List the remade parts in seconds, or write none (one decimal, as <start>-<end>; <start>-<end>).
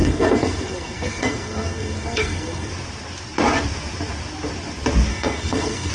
0.0-2.7; 5.1-5.9